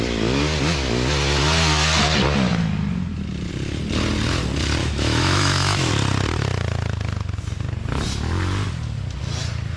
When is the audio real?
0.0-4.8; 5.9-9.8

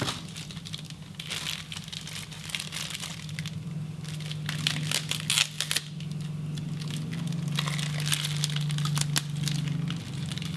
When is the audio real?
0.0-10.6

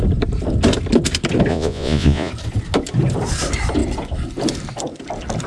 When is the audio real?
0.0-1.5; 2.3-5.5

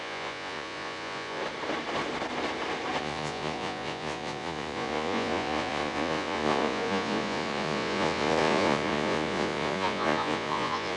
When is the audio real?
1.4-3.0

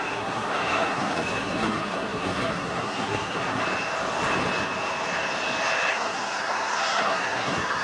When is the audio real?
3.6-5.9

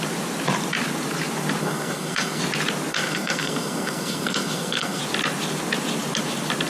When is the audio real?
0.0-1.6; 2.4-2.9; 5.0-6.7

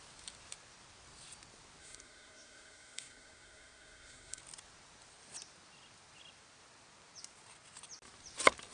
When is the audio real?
0.0-1.8; 4.4-8.7

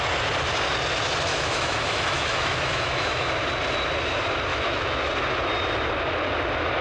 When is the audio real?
0.0-1.3; 3.3-4.5; 5.1-6.8